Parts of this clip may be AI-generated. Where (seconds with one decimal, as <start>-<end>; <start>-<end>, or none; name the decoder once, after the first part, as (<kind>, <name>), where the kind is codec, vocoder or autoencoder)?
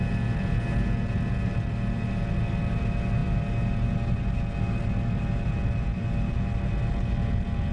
none